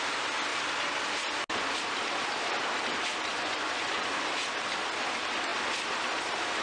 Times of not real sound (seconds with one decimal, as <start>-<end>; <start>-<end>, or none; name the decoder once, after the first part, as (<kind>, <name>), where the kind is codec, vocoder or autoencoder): 3.3-4.1 (vocoder, Vocos)